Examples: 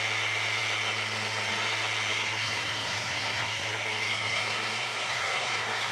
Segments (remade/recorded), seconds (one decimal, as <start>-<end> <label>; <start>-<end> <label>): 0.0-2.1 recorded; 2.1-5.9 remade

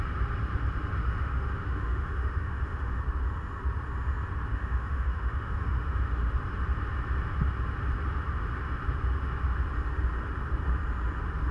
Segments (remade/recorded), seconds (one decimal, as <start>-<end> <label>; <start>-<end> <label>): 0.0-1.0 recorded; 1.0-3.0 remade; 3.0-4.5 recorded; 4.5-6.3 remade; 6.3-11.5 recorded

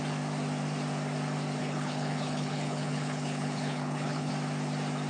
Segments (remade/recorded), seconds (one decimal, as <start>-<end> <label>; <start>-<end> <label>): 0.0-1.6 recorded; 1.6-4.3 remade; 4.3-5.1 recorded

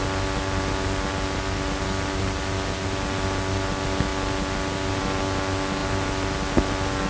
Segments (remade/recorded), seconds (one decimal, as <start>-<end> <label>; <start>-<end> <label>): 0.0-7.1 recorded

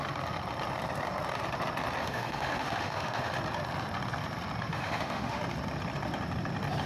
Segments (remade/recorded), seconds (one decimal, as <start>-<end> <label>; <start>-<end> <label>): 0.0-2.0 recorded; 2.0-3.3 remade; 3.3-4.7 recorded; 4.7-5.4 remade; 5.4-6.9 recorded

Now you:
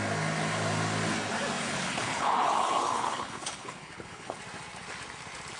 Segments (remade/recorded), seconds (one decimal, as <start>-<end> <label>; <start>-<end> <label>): 0.0-1.6 recorded; 1.6-4.4 remade; 4.4-5.6 recorded

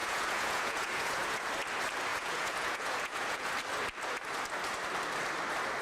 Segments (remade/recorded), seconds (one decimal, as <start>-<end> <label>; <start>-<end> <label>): 0.0-1.5 remade; 1.5-2.1 recorded; 2.1-3.5 remade; 3.5-5.8 recorded

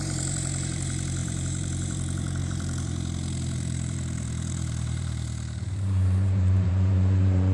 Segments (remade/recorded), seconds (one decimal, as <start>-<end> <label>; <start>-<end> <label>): 0.0-7.5 remade